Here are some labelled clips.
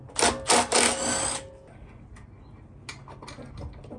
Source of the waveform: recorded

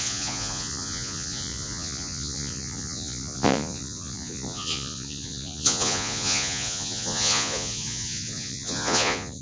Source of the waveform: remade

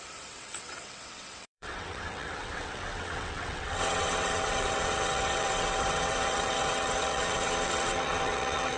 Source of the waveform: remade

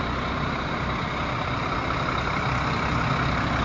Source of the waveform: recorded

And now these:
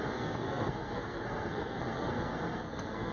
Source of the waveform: remade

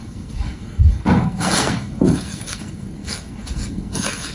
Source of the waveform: remade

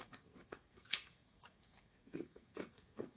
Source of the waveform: remade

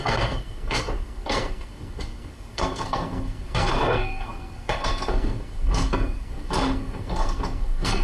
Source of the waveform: remade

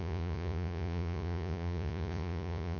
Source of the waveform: remade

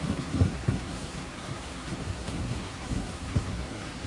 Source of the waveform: remade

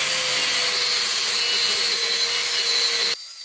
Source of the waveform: recorded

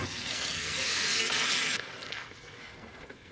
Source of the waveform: remade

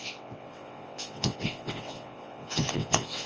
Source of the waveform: remade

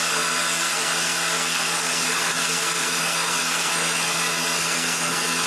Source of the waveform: remade